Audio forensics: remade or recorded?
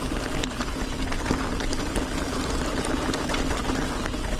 recorded